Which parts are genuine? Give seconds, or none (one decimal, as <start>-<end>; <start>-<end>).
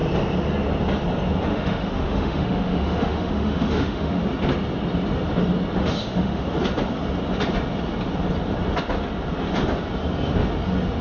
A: 0.0-1.5; 4.2-5.8; 6.4-11.0